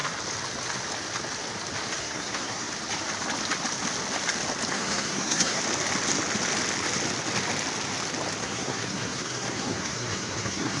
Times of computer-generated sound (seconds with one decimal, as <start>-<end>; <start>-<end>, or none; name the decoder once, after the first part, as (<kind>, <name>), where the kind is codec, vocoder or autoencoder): 2.0-2.7 (codec, SNAC); 4.7-5.6; 8.4-10.8